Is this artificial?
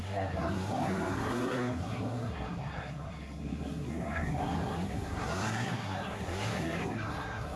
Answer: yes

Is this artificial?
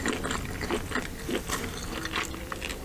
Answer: no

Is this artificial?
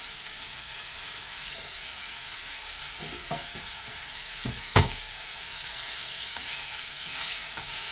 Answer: yes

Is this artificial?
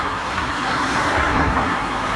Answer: yes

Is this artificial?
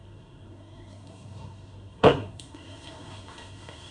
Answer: yes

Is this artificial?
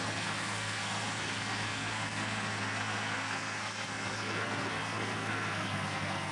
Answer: yes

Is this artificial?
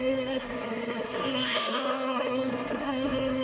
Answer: yes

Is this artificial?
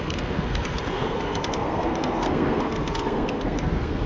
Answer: yes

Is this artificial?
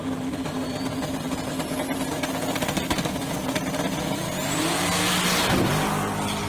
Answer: no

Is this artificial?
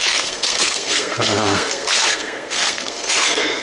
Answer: yes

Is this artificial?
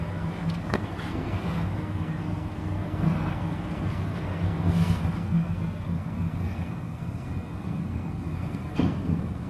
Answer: yes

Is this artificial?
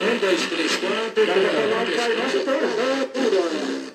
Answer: no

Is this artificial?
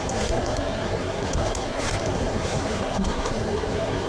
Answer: yes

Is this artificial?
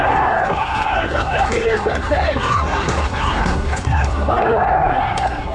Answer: yes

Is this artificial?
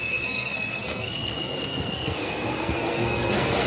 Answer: yes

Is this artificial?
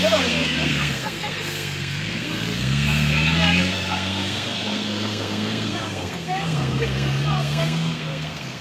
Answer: yes